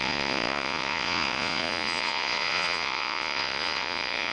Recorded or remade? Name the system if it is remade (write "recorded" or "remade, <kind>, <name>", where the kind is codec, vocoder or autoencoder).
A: remade, vocoder, Vocos